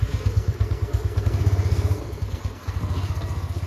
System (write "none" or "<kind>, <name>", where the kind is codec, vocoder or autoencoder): codec, SNAC